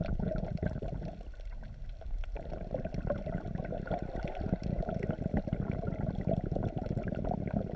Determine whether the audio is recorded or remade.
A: recorded